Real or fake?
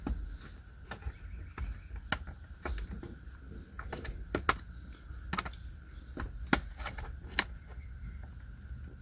real